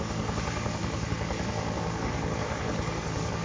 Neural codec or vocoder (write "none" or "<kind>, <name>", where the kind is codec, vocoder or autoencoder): codec, DAC